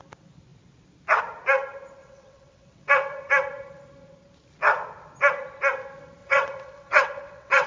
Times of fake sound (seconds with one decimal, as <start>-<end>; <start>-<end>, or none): 2.0-3.3; 6.2-7.7